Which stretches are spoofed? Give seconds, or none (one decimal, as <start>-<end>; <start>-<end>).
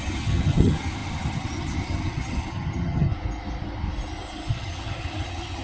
0.0-3.1; 4.5-5.6